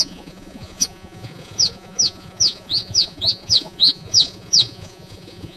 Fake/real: fake